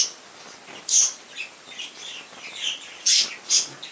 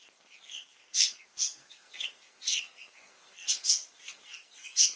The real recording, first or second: first